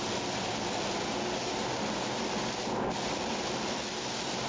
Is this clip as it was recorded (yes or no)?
yes